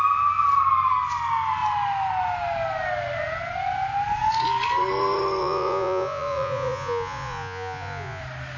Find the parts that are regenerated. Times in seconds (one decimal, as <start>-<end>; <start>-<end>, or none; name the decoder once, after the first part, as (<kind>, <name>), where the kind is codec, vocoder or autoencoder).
5.4-8.2 (vocoder, Vocos)